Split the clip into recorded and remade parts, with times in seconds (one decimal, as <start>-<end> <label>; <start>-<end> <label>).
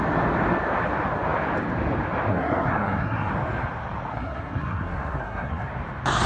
0.0-2.3 recorded; 2.3-3.3 remade; 3.3-4.1 recorded; 4.1-5.7 remade; 5.7-6.3 recorded